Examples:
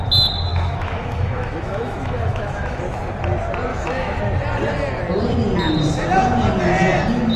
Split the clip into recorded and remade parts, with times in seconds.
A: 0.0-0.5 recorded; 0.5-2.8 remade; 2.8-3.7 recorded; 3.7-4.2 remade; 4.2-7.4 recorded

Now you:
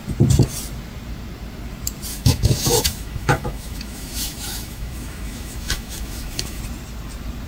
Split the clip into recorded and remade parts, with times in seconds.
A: 0.0-2.1 recorded; 2.1-6.6 remade; 6.6-7.5 recorded

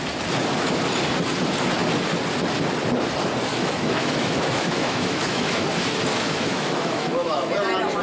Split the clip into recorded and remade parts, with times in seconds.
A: 0.0-3.5 recorded; 3.5-5.6 remade; 5.6-6.1 recorded; 6.1-7.5 remade; 7.5-8.0 recorded

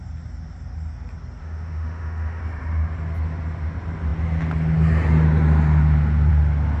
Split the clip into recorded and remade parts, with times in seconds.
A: 0.0-1.4 recorded; 1.4-2.4 remade; 2.4-6.8 recorded

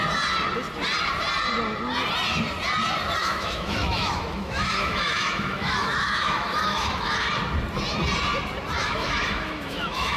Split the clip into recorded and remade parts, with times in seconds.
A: 0.0-3.2 recorded; 3.2-7.3 remade; 7.3-8.8 recorded; 8.8-10.2 remade